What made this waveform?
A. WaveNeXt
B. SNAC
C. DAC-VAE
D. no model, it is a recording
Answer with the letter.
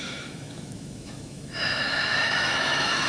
C